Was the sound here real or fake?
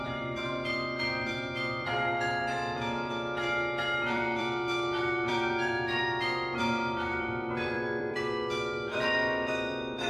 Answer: fake